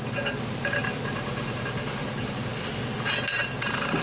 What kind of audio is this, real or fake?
real